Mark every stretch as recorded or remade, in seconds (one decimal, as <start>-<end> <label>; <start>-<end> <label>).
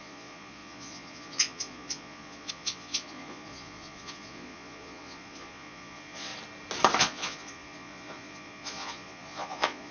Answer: 0.0-6.3 remade; 6.3-7.0 recorded; 7.0-9.9 remade